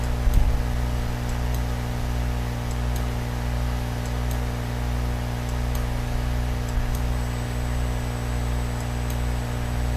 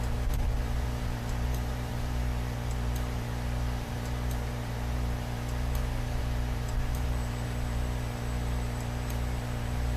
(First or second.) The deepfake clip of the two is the second